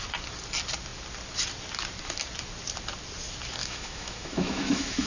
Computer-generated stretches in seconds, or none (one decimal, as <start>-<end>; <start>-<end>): 3.6-5.1